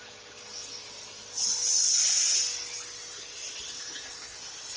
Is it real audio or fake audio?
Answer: real